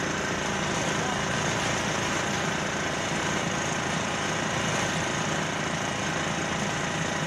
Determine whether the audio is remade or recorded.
recorded